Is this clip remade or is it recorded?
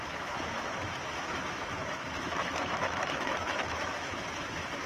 remade